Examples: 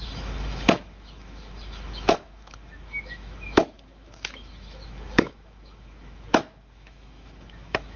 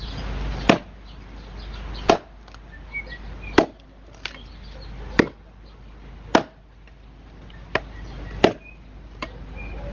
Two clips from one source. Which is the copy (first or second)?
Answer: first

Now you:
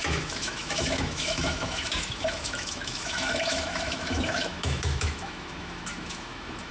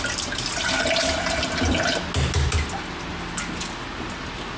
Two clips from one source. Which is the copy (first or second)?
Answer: first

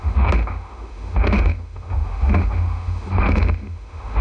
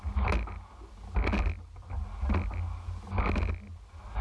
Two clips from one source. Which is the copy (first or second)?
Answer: first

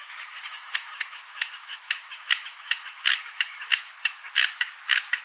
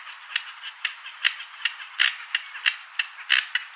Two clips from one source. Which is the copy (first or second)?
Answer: first